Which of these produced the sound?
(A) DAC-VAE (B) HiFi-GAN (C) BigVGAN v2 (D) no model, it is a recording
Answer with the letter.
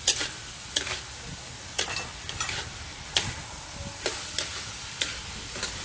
D